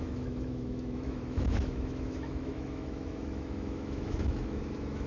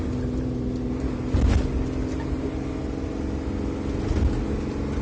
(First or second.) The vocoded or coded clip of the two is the first